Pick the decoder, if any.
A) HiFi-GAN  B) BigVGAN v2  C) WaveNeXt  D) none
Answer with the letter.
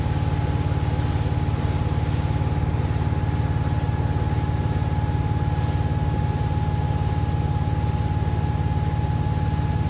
D